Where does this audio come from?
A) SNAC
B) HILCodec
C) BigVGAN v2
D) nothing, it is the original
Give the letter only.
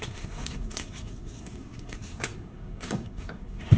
A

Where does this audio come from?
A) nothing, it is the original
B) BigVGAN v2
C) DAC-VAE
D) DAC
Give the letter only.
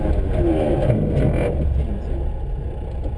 A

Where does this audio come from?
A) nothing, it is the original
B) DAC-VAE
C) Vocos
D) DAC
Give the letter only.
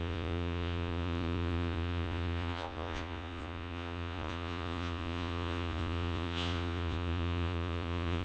C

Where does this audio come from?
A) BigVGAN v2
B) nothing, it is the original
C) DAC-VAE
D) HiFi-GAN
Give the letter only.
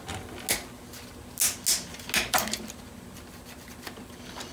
B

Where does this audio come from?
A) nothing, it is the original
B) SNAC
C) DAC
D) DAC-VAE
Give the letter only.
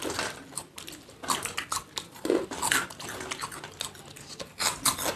A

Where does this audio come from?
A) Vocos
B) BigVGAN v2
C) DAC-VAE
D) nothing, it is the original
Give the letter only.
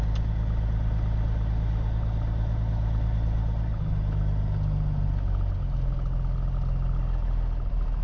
D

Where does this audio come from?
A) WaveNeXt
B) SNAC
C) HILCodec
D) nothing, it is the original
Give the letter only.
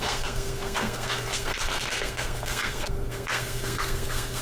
B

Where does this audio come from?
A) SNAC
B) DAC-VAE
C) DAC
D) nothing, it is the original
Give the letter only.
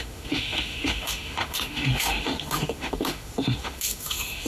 B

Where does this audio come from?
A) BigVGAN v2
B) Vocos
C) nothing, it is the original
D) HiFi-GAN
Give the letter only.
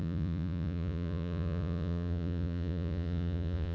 B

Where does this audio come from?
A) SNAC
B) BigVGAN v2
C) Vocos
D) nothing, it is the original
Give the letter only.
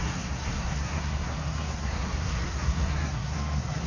A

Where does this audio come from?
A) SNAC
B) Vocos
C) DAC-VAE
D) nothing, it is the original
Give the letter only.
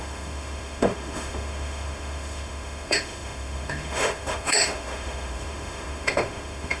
C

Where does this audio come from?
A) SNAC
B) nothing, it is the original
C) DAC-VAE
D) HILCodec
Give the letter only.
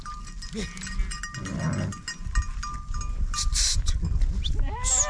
B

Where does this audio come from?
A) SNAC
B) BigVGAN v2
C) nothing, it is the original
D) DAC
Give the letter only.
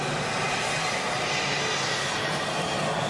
C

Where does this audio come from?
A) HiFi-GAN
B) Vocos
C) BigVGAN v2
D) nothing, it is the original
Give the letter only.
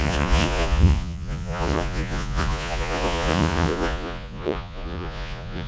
B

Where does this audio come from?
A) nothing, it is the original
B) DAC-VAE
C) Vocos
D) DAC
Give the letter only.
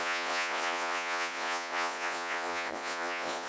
C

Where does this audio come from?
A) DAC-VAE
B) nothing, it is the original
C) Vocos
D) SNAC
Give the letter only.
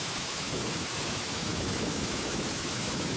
A